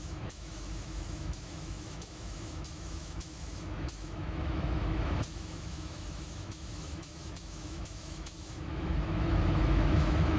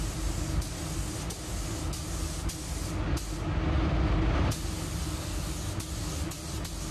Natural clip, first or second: second